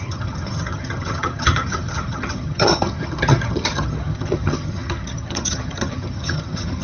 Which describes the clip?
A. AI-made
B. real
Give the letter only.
A